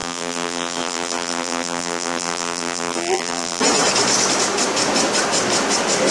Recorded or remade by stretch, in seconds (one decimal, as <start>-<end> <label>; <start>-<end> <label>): 0.0-3.6 remade; 3.6-6.1 recorded